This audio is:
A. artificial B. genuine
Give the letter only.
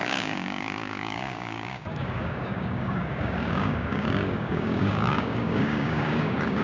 A